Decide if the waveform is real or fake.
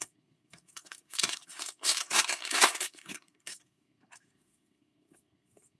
fake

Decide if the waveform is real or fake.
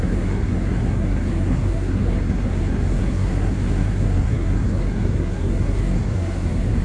fake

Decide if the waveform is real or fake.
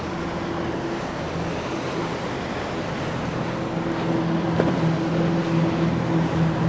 real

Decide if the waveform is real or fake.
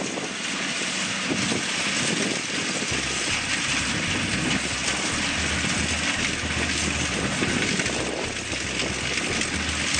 real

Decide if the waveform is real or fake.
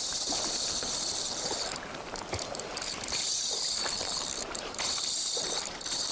fake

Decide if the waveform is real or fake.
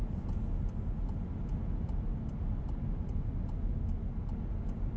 real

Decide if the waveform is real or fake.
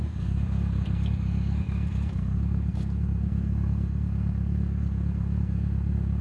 fake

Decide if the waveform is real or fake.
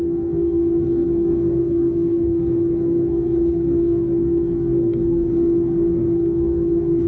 fake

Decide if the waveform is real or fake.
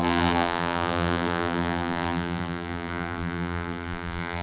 fake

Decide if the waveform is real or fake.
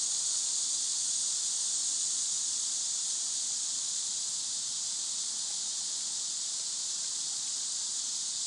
real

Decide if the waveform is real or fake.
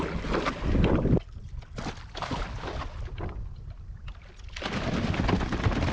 real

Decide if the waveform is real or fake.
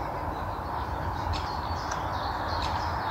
real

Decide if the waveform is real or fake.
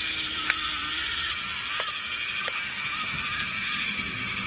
fake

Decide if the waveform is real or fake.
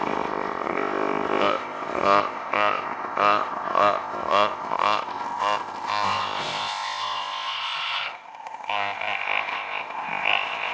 fake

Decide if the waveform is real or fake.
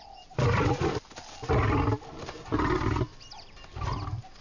real